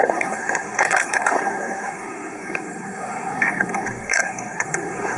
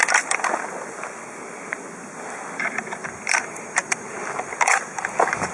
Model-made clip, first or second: first